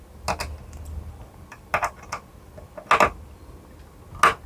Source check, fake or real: real